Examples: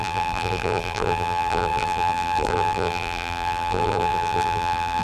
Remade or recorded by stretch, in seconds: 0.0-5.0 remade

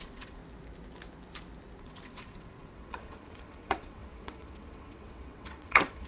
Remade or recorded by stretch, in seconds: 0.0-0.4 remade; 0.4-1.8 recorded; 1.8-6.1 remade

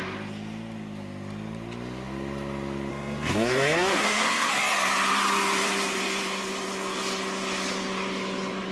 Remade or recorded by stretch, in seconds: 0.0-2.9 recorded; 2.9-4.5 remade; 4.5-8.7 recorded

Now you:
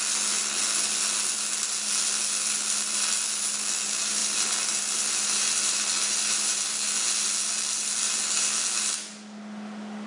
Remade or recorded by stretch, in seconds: 0.0-10.1 recorded

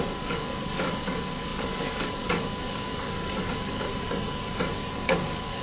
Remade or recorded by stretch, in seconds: 0.0-3.9 remade; 3.9-4.9 recorded; 4.9-5.6 remade

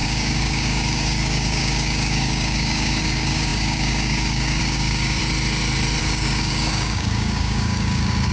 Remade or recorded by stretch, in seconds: 0.0-5.2 remade; 5.2-6.0 recorded; 6.0-8.3 remade

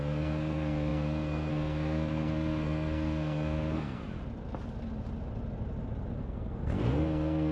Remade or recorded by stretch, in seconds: 0.0-4.0 remade; 4.0-6.2 recorded; 6.2-7.5 remade